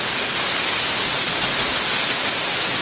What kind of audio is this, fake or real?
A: real